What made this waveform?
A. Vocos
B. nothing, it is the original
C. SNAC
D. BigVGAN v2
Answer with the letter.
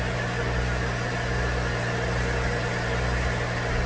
B